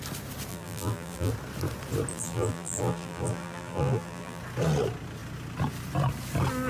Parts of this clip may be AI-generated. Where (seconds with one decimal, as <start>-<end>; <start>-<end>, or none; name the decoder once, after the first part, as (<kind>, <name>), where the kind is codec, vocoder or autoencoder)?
0.5-1.3 (vocoder, BigVGAN v2); 2.1-4.4